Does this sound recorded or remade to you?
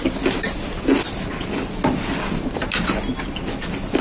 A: recorded